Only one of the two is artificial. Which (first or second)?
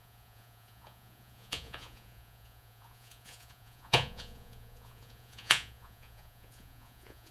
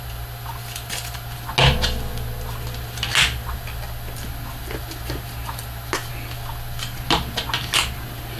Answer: first